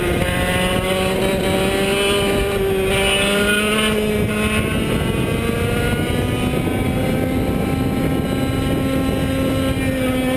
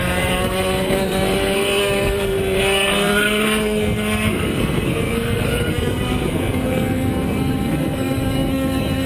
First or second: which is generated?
second